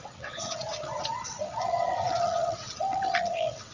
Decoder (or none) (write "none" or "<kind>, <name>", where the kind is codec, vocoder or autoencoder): vocoder, WaveNeXt